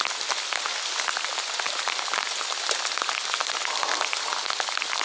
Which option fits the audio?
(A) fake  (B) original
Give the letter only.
B